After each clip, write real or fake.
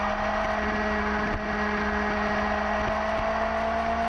real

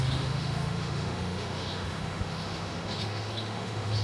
fake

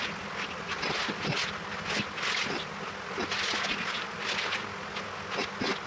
real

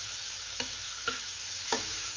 fake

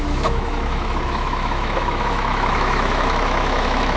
fake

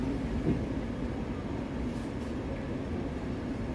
real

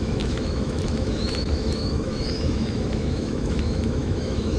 fake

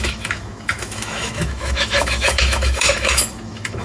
fake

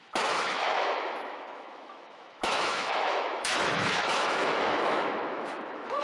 fake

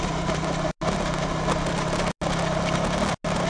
real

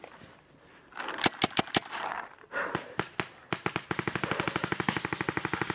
real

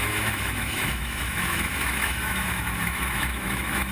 fake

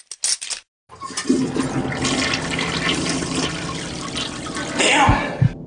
real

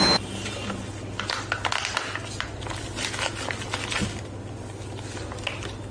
real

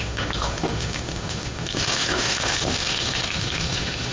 fake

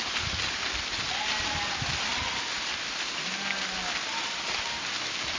real